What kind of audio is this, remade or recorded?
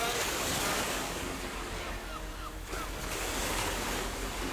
remade